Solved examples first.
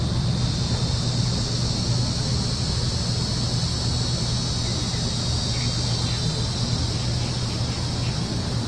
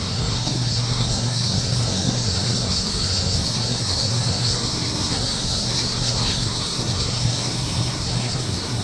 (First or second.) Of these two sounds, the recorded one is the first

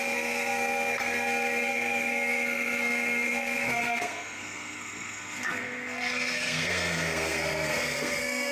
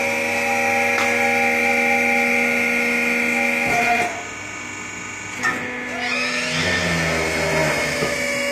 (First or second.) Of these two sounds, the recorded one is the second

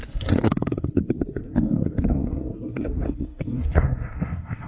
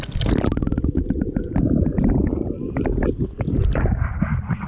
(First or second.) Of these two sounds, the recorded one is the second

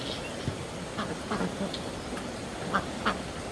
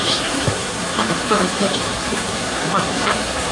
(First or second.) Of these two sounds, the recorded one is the first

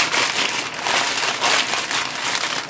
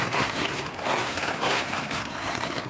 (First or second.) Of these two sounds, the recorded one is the first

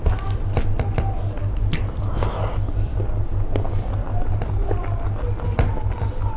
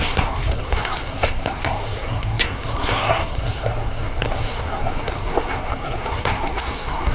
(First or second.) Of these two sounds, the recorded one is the first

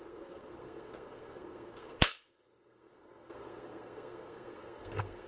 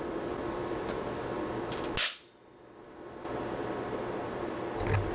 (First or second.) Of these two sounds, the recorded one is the second